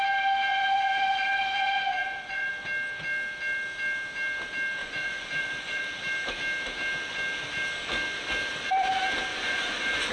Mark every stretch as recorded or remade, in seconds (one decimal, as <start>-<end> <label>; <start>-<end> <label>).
0.0-0.5 recorded; 0.5-2.5 remade; 2.5-4.8 recorded; 4.8-5.8 remade; 5.8-9.3 recorded; 9.3-10.1 remade